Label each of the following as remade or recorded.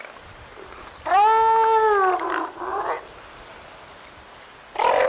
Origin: recorded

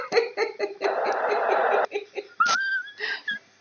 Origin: recorded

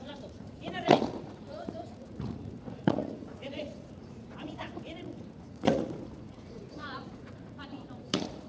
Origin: remade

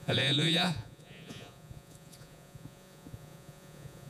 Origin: remade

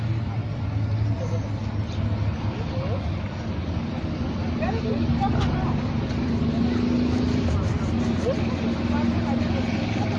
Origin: recorded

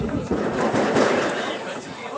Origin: remade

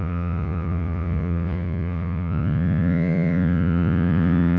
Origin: remade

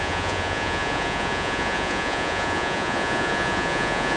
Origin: remade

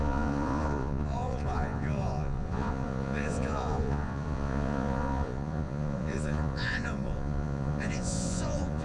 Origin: remade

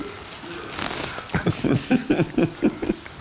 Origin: recorded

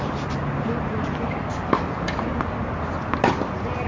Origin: recorded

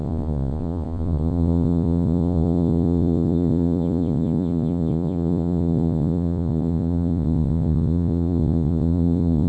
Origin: remade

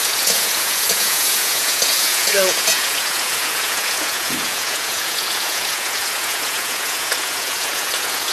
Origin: remade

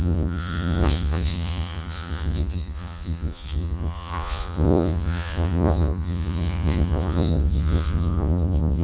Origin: remade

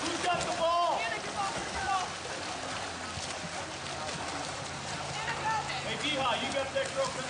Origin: recorded